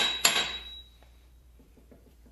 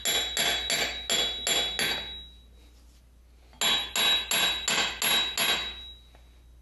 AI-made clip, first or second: first